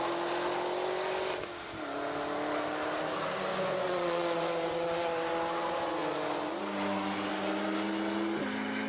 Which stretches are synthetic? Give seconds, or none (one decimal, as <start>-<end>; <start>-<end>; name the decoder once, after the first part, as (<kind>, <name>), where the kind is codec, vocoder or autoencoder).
3.5-5.3 (vocoder, Vocos)